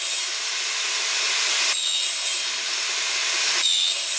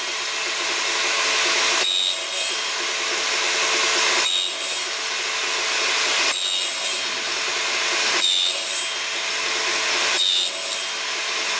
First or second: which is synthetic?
first